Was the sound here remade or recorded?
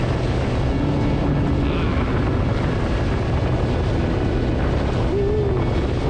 recorded